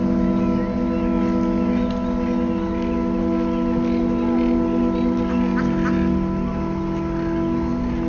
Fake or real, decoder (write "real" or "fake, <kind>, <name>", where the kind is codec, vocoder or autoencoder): real